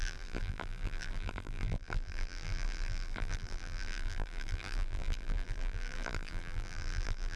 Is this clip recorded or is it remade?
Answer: remade